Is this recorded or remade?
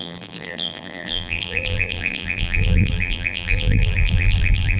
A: remade